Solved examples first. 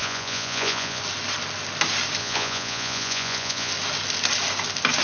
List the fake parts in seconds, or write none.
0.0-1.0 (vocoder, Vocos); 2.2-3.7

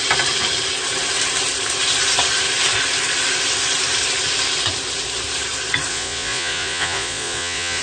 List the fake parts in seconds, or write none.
5.9-7.8 (vocoder, Vocos)